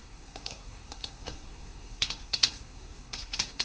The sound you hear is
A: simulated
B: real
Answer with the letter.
A